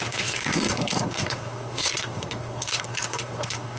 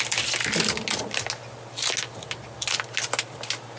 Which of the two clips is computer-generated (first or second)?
first